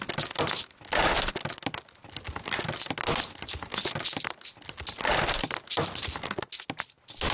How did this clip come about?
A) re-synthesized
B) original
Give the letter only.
B